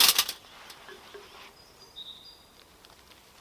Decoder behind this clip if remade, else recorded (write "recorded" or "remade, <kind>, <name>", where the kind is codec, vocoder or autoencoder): recorded